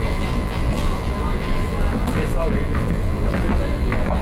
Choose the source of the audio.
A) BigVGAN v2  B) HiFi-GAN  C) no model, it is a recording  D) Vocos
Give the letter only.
A